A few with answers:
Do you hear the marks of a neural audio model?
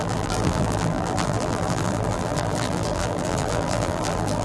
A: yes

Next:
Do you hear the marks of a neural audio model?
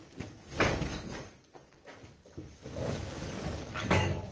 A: yes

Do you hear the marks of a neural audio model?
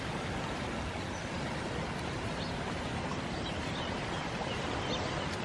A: no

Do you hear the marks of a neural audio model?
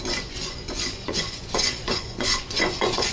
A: yes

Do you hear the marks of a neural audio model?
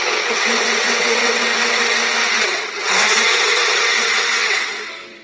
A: yes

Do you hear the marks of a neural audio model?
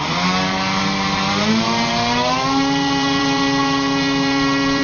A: yes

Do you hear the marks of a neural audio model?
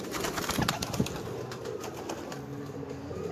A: no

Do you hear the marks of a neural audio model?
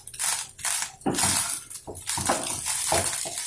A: no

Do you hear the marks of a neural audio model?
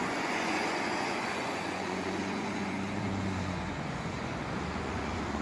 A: yes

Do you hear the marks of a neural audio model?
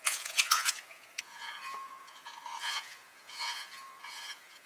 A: yes